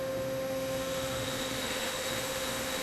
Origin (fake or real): fake